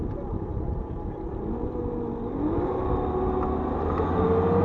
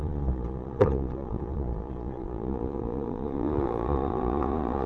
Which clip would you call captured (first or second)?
first